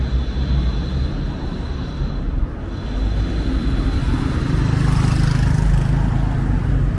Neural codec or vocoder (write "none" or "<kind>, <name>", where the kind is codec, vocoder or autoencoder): none